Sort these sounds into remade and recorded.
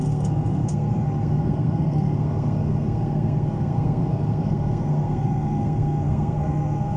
remade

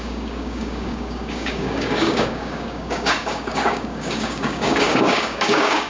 remade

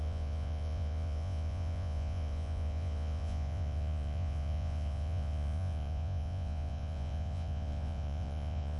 remade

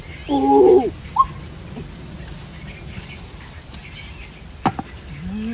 recorded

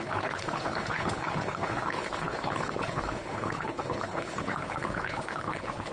remade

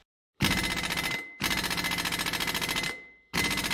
recorded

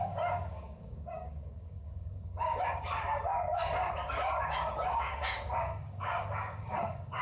remade